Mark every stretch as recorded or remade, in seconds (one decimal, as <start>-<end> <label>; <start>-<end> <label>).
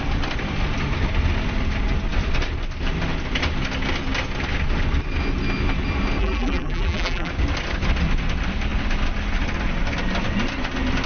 0.0-6.2 recorded; 6.2-7.3 remade; 7.3-11.1 recorded